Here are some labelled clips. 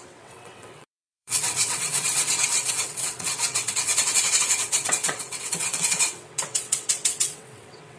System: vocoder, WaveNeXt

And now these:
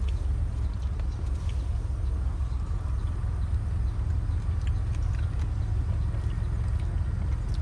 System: none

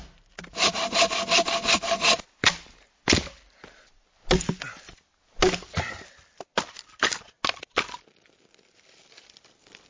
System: none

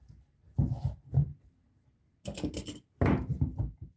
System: none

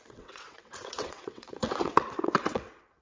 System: vocoder, WaveNeXt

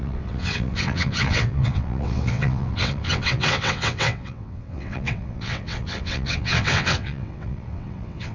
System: vocoder, WaveNeXt